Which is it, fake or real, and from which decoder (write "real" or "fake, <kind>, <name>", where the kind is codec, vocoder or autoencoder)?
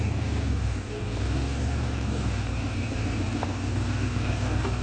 fake, codec, DAC